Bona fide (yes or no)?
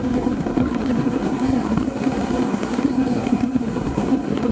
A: no